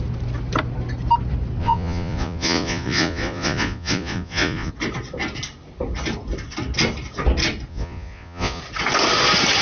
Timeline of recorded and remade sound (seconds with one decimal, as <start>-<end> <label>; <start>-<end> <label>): 0.0-1.6 recorded; 1.6-4.7 remade; 4.7-7.7 recorded; 7.7-8.6 remade; 8.6-9.6 recorded